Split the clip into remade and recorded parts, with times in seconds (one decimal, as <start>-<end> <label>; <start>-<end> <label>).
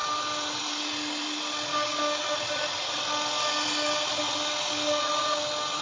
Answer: 0.0-1.7 recorded; 1.7-2.2 remade; 2.2-5.8 recorded